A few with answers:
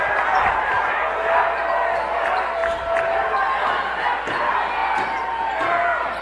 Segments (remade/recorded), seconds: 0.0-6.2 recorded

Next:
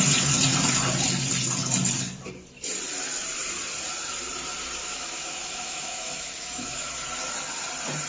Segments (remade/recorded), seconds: 0.0-4.8 recorded; 4.8-6.9 remade; 6.9-8.1 recorded